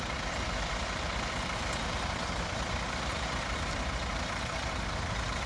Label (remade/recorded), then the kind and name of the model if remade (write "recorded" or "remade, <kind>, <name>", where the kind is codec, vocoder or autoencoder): remade, vocoder, BigVGAN v2